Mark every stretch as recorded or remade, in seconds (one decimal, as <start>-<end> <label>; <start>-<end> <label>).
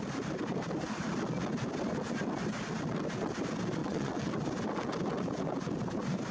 0.0-3.8 recorded; 3.8-4.3 remade; 4.3-6.3 recorded